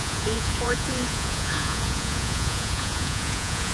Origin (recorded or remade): remade